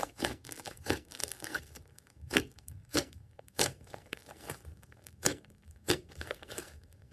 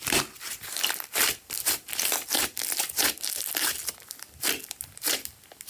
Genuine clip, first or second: second